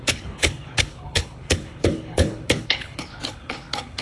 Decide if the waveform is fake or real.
fake